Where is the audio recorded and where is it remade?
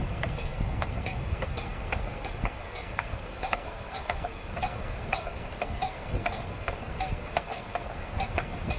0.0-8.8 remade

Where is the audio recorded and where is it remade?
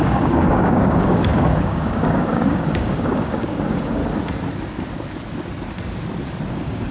0.0-4.0 remade; 4.0-6.5 recorded; 6.5-6.9 remade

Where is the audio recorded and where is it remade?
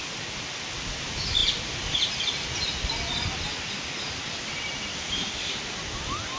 0.0-6.4 recorded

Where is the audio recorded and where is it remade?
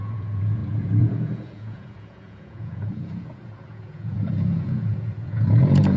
0.0-6.0 remade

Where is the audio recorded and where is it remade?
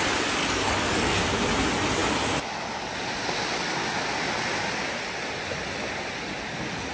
0.0-0.4 recorded; 0.4-1.2 remade; 1.2-6.9 recorded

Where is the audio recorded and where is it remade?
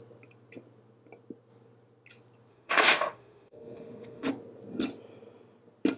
0.0-2.5 recorded; 2.5-4.3 remade; 4.3-6.0 recorded